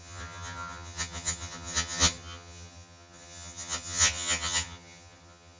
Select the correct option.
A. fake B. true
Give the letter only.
A